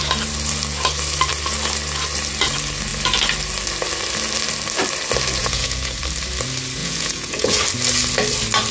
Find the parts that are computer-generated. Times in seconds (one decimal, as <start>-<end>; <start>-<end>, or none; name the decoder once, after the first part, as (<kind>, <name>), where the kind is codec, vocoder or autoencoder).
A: 5.4-6.0 (vocoder, Vocos); 6.8-7.6